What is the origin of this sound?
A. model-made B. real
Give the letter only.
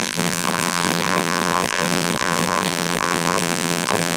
A